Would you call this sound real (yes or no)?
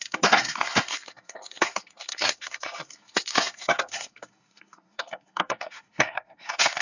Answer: no